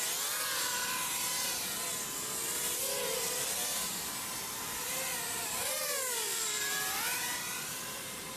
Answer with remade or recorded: remade